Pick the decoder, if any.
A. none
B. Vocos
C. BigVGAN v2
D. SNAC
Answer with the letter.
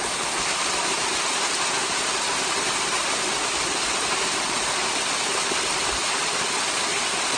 C